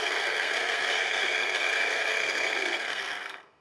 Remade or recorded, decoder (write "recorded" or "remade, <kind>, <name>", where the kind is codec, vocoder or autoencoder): remade, codec, SNAC